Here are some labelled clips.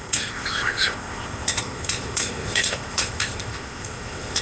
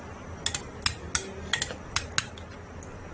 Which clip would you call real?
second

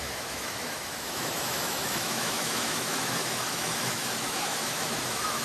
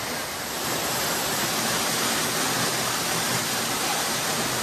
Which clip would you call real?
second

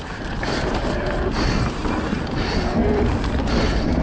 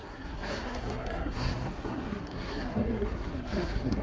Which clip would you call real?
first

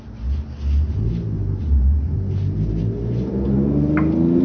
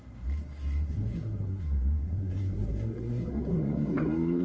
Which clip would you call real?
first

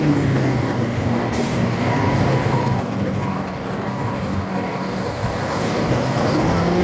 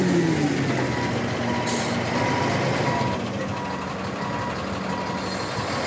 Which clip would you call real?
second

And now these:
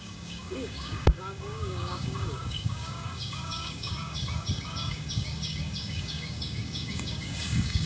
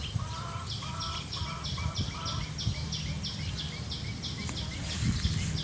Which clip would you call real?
second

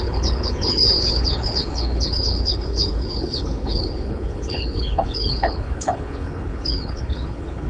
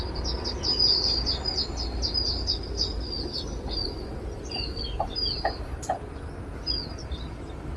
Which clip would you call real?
second